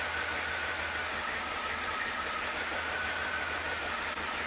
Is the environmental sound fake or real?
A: real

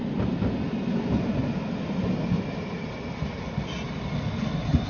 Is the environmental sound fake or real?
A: real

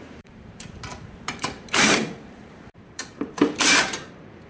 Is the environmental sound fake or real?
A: fake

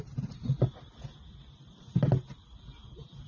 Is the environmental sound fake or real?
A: real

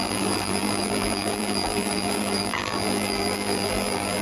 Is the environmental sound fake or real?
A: fake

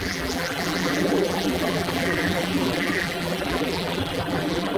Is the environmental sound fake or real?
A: fake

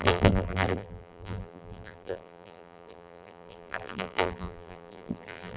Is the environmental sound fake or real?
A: fake